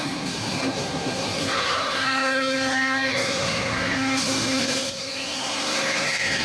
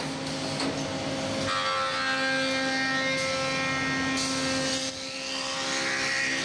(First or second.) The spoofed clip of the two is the first